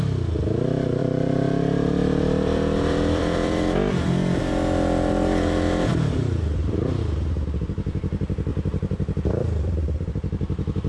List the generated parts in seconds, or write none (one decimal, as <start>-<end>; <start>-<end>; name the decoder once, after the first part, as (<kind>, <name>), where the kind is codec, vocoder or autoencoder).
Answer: 1.0-4.1 (vocoder, BigVGAN v2); 5.9-7.0; 8.5-9.3